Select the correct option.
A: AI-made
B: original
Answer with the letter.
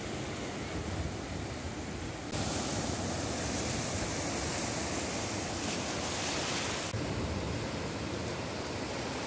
B